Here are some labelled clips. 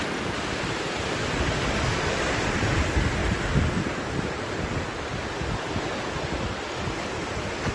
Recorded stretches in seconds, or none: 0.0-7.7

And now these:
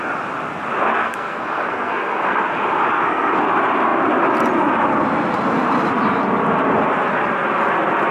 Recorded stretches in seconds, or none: 0.0-0.9; 2.4-2.9; 3.4-8.1

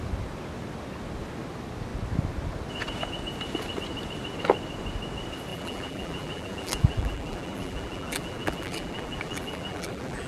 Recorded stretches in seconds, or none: 0.0-5.5